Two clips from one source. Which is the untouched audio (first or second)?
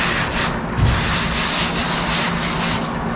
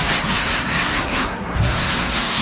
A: first